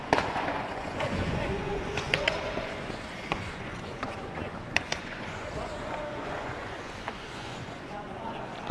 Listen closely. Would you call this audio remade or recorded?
remade